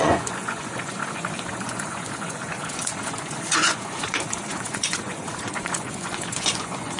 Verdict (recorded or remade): remade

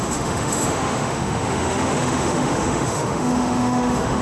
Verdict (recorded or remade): remade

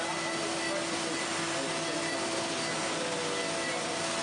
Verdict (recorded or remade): recorded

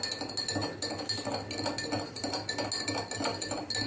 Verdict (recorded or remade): recorded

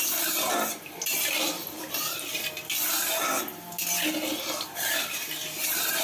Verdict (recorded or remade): recorded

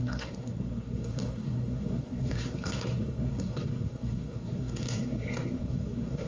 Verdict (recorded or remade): remade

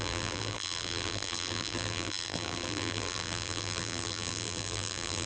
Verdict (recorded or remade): remade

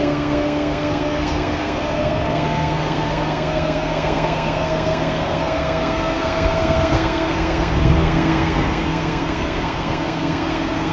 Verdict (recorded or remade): remade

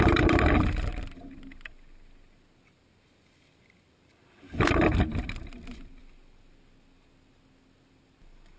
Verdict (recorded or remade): recorded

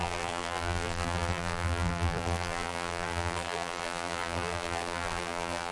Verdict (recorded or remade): remade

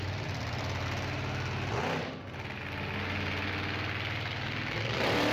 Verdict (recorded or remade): recorded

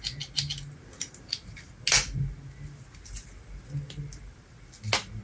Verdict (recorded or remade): recorded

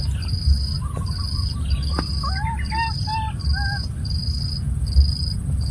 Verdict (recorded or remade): recorded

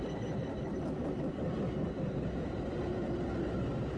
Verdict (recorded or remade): recorded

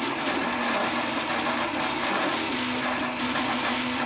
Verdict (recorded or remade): recorded